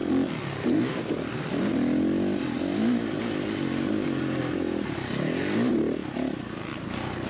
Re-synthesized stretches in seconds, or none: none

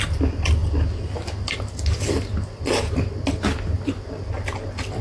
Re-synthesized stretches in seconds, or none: none

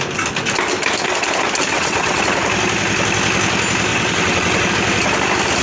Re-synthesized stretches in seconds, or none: 1.7-2.2; 3.9-4.7

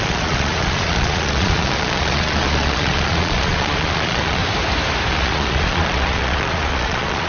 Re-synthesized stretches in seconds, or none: 0.0-4.4; 5.1-7.3